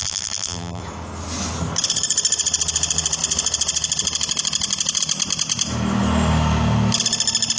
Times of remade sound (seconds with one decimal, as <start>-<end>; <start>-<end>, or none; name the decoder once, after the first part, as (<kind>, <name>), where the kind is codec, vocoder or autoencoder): 0.0-0.8 (vocoder, BigVGAN v2)